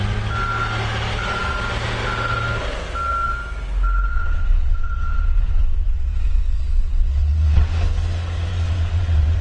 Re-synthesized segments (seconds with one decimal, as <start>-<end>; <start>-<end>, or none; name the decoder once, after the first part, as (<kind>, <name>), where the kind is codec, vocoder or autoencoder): 4.1-7.8 (vocoder, WaveNeXt); 8.5-9.4